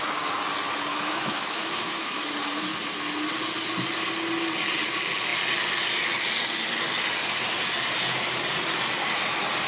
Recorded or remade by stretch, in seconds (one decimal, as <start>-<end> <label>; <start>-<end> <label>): 0.0-0.9 recorded; 0.9-2.3 remade; 2.3-9.7 recorded